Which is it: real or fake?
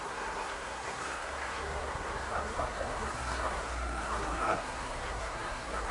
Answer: fake